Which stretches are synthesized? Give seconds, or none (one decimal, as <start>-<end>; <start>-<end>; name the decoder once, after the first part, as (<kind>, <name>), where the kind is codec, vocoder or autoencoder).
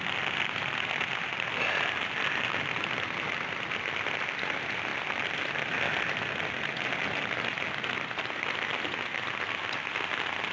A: none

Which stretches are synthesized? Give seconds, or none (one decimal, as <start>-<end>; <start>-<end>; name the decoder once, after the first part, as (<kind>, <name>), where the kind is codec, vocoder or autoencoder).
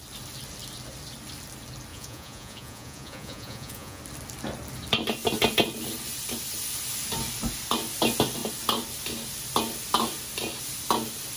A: 1.9-4.0 (vocoder, Vocos)